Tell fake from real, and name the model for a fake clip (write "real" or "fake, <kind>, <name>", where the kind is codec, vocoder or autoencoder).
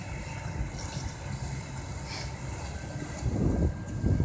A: real